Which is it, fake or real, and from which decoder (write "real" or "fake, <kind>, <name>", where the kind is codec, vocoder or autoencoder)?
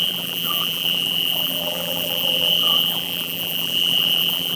fake, vocoder, BigVGAN v2